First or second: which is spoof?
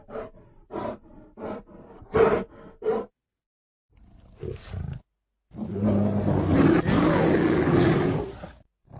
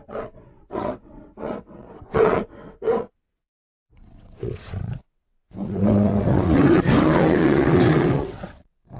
second